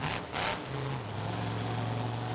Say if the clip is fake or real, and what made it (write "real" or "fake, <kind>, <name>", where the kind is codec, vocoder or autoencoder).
real